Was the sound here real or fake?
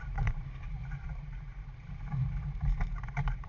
fake